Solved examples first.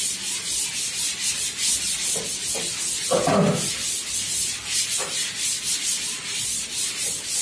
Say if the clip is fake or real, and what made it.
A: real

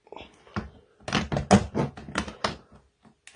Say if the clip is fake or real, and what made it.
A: real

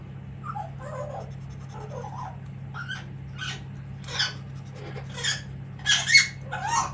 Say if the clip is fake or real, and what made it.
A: real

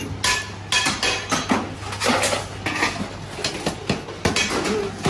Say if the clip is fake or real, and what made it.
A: real